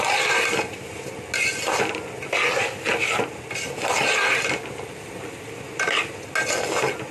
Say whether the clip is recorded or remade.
recorded